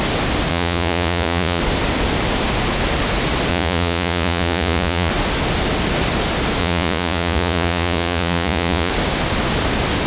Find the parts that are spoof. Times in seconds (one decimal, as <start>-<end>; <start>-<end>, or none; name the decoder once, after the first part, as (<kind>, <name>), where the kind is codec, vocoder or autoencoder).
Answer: 0.5-1.6 (vocoder, Vocos); 3.5-5.1; 6.6-8.9